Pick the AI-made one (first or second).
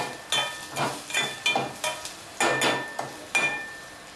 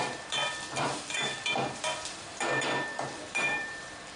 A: second